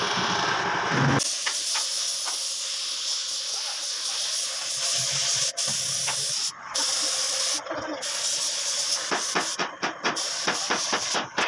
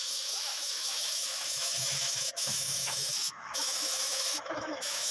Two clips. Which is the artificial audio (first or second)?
second